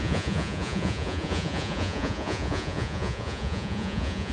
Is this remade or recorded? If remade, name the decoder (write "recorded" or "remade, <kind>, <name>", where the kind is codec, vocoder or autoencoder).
remade, vocoder, Vocos